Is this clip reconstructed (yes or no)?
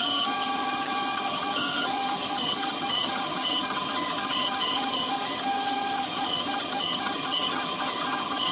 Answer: yes